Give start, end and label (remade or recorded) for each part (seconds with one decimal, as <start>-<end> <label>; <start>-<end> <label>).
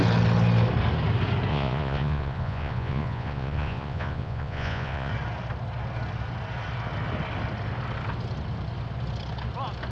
0.0-1.5 recorded; 1.5-5.1 remade; 5.1-9.9 recorded